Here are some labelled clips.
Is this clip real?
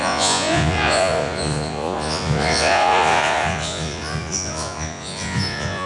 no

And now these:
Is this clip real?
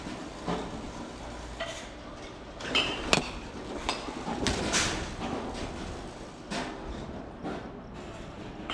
yes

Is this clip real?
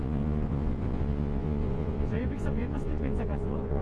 no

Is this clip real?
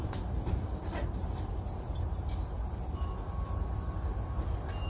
yes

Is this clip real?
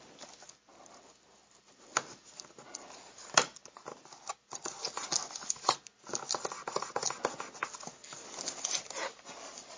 yes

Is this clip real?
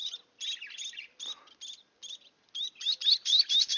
yes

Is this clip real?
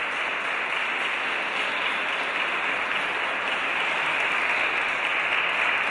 yes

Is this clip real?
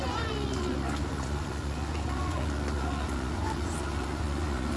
no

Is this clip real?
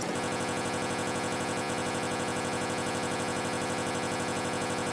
no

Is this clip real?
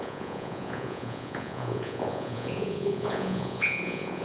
no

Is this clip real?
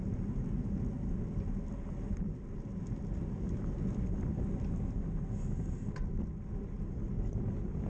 yes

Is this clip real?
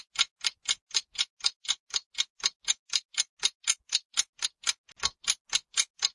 yes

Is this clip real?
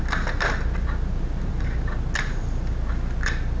yes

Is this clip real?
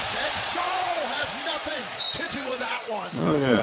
no